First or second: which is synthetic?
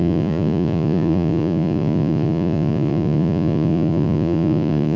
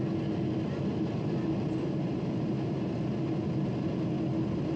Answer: first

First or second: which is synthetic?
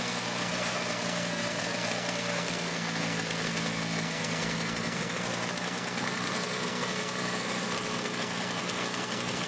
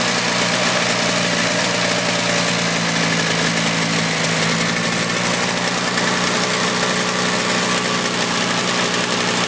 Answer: first